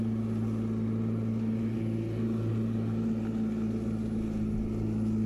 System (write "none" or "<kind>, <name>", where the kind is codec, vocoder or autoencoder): none